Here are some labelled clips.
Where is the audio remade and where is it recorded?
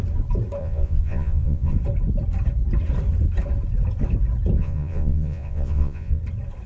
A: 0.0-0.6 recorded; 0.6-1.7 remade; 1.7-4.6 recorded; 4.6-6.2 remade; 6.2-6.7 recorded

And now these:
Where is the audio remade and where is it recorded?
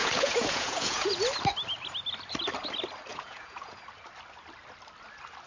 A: 0.0-1.1 remade; 1.1-3.1 recorded; 3.1-3.8 remade; 3.8-5.5 recorded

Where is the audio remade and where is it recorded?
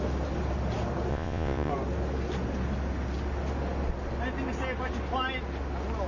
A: 0.0-1.1 recorded; 1.1-1.7 remade; 1.7-6.1 recorded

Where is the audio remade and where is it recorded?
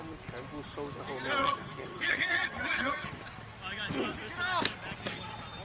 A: 0.0-1.4 recorded; 1.4-3.1 remade; 3.1-5.6 recorded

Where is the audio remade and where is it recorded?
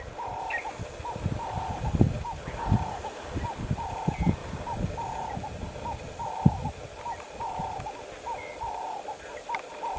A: 0.0-10.0 recorded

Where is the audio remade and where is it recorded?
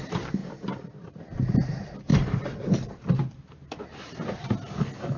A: 0.0-0.4 remade; 0.4-1.2 recorded; 1.2-2.1 remade; 2.1-5.2 recorded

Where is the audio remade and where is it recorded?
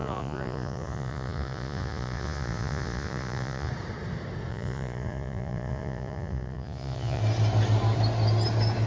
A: 0.0-3.7 remade; 3.7-4.5 recorded; 4.5-7.2 remade; 7.2-8.9 recorded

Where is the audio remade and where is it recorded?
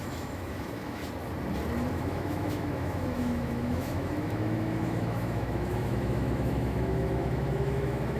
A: 0.0-1.0 remade; 1.0-1.9 recorded; 1.9-8.2 remade